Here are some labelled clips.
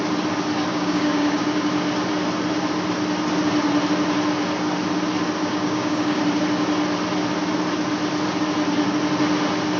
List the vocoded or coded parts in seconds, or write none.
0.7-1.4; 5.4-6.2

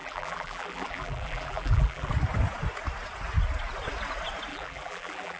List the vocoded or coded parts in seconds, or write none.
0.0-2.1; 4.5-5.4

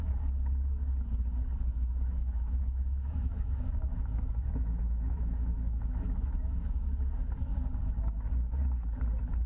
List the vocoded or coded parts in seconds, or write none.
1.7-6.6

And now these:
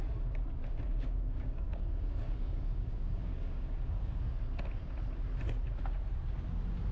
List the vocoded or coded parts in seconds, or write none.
0.6-4.2

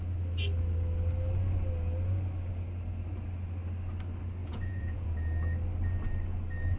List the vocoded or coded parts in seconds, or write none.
4.4-5.1

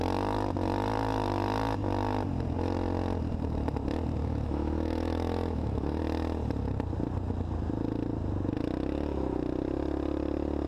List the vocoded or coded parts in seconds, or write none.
4.2-6.0

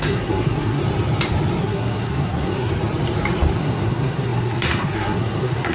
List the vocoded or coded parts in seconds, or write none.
0.0-0.8; 1.6-2.7; 3.6-5.7

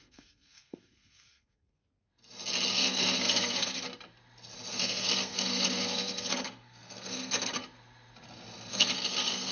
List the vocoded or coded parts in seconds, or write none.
0.0-1.8; 2.7-3.8; 4.7-7.6; 8.7-9.5